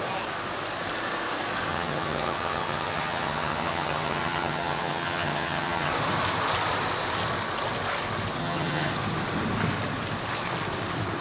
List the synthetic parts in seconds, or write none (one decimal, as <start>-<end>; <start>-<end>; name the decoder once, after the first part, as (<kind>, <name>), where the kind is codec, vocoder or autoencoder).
1.7-5.9 (vocoder, HiFi-GAN); 8.4-8.9